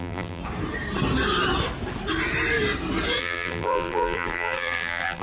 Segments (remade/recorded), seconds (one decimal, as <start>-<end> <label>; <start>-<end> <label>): 0.0-0.4 remade; 0.4-3.2 recorded; 3.2-5.2 remade